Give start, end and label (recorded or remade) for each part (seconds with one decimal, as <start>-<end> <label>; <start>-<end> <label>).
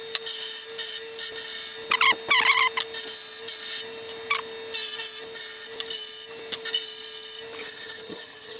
0.0-7.6 recorded; 7.6-8.6 remade